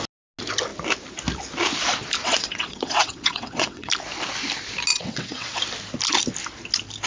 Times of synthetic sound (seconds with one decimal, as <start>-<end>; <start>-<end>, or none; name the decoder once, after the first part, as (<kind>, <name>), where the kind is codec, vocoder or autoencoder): 2.2-3.9 (vocoder, WaveNeXt); 4.9-5.6